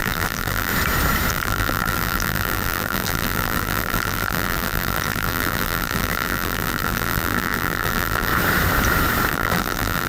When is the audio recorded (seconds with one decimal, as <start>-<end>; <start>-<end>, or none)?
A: 0.7-1.3; 8.3-9.3